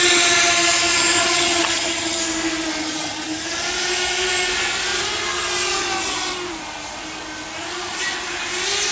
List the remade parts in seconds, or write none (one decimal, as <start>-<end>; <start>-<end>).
1.2-2.2; 2.8-3.5